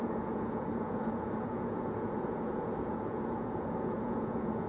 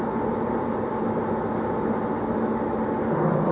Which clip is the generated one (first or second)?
first